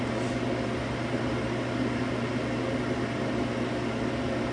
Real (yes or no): yes